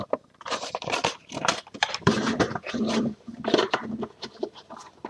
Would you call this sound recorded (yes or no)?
no